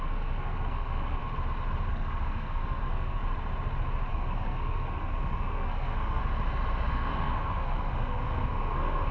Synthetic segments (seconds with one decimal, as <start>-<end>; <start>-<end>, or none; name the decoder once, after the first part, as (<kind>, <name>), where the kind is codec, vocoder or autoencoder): 0.0-1.2 (codec, SNAC); 1.9-3.2; 4.1-6.2; 6.9-9.1